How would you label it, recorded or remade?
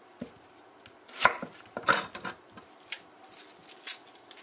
recorded